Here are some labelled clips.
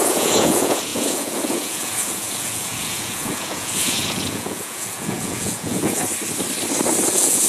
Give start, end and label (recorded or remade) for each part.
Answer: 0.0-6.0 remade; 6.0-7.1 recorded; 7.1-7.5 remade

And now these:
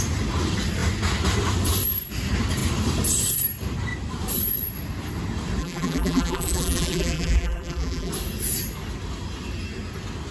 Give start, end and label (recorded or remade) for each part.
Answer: 0.0-5.6 recorded; 5.6-8.1 remade; 8.1-10.3 recorded

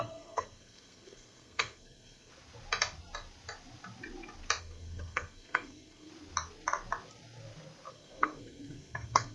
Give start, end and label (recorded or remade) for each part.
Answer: 0.0-2.3 remade; 2.3-4.6 recorded; 4.6-6.1 remade; 6.1-7.9 recorded; 7.9-9.3 remade

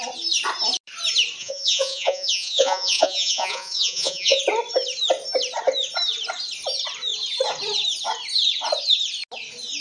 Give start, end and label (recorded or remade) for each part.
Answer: 0.0-1.4 recorded; 1.4-4.4 remade; 4.4-9.8 recorded

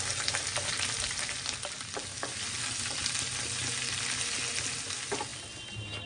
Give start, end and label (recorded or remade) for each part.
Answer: 0.0-6.1 recorded

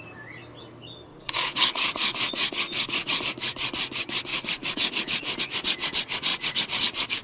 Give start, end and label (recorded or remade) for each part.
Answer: 0.0-1.1 recorded; 1.1-3.2 remade; 3.2-4.3 recorded; 4.3-5.4 remade; 5.4-6.3 recorded; 6.3-6.8 remade; 6.8-7.2 recorded